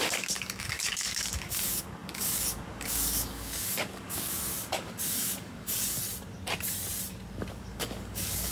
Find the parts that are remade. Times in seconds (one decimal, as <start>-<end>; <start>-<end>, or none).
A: 0.0-6.0; 7.5-8.5